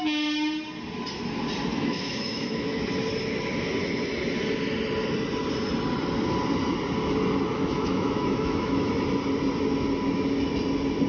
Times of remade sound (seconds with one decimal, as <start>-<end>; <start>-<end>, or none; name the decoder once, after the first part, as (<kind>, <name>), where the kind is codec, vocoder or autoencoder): 1.7-2.8 (autoencoder, DAC-VAE); 7.5-8.9